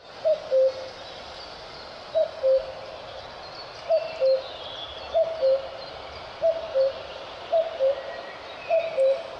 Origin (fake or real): real